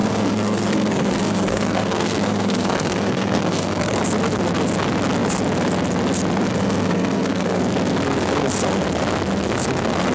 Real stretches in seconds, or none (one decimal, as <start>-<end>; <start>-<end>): 4.0-6.5; 7.6-10.1